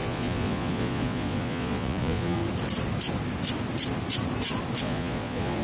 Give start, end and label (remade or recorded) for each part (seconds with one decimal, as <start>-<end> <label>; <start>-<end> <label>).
0.0-2.4 remade; 2.4-4.8 recorded; 4.8-5.6 remade